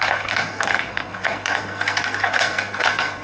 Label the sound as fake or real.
fake